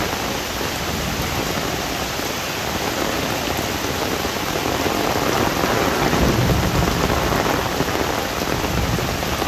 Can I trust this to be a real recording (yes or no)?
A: yes